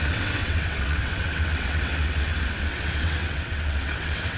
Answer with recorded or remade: remade